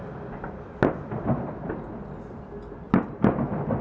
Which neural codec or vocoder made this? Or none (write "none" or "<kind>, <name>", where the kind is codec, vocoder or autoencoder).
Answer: none